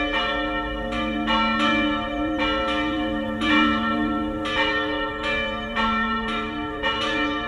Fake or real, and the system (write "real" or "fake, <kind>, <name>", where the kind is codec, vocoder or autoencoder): fake, vocoder, BigVGAN v2